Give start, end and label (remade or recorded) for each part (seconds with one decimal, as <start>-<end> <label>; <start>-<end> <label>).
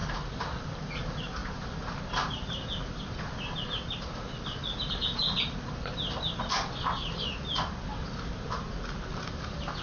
0.0-9.8 recorded